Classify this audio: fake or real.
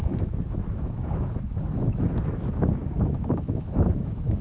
fake